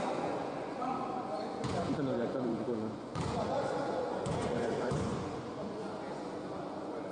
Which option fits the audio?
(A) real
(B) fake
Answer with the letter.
B